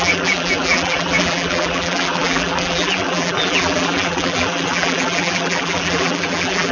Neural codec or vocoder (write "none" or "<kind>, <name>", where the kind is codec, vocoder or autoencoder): vocoder, BigVGAN v2